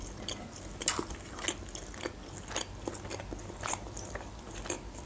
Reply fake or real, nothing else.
real